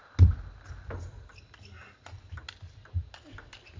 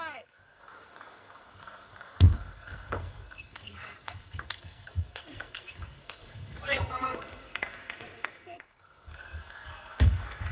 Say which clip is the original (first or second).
first